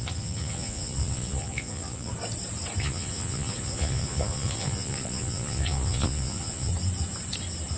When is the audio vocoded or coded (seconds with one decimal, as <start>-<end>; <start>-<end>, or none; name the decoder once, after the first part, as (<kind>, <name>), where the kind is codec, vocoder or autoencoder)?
0.0-2.1 (vocoder, Vocos); 2.8-6.7